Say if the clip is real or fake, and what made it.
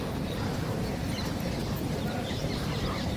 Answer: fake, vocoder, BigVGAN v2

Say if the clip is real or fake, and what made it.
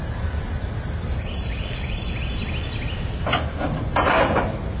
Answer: real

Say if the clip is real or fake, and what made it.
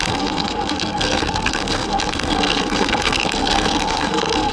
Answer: fake, codec, SNAC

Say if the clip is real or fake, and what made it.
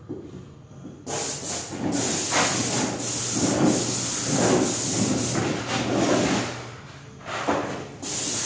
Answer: real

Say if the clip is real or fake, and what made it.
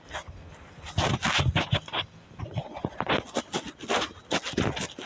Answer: real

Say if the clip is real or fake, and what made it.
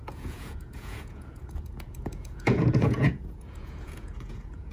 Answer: fake, vocoder, Vocos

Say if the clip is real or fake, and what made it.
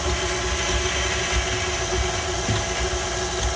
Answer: real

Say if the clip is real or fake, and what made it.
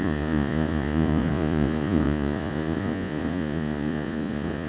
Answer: fake, vocoder, Vocos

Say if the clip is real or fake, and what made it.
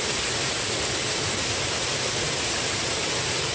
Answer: real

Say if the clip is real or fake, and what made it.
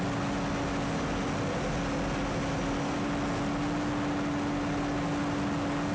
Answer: real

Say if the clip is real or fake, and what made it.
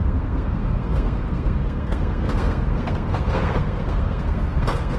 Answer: fake, codec, SNAC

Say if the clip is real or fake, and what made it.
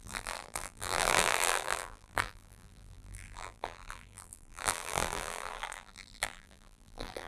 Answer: fake, vocoder, BigVGAN v2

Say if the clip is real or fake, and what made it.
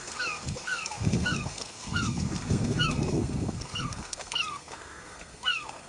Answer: fake, codec, SNAC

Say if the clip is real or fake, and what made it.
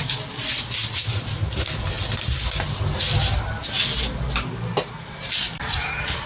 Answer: real